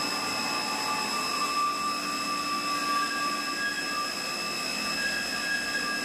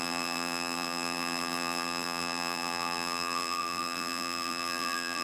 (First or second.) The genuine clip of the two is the first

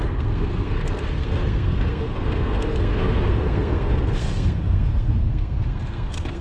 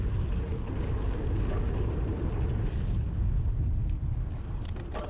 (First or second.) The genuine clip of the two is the second